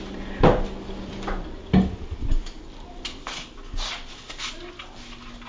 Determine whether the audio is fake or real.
real